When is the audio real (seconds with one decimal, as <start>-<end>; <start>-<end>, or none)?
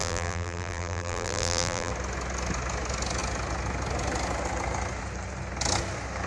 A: 1.9-6.3